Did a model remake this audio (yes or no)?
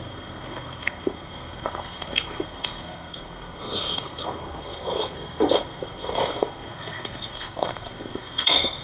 yes